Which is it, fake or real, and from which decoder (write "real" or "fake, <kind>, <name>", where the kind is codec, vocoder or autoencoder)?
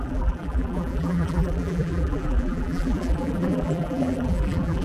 fake, vocoder, BigVGAN v2